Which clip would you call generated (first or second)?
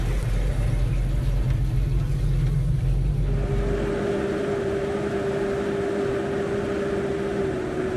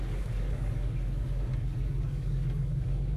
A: second